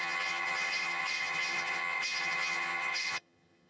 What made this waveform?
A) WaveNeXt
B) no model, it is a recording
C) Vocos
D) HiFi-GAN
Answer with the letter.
D